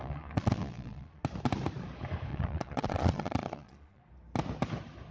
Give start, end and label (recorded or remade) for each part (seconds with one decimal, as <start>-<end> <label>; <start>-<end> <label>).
0.0-1.2 remade; 1.2-2.3 recorded; 2.3-4.0 remade; 4.0-5.1 recorded